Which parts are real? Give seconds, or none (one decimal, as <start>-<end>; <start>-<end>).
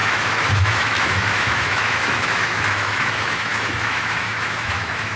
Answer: none